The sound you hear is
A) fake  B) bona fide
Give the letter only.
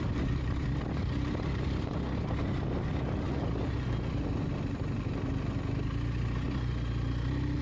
B